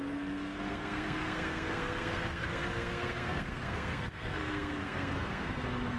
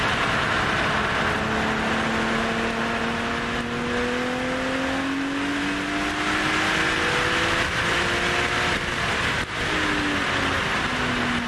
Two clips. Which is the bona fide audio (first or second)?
second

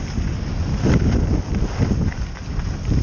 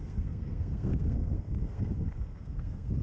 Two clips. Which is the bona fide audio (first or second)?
first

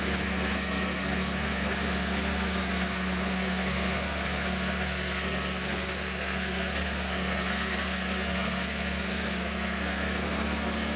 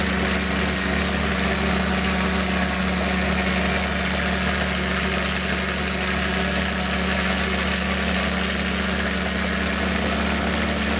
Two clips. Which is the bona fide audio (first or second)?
second